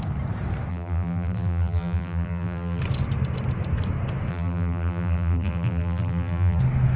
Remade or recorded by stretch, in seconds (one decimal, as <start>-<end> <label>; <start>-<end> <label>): 0.0-0.7 recorded; 0.7-2.8 remade; 2.8-4.3 recorded; 4.3-6.6 remade; 6.6-7.0 recorded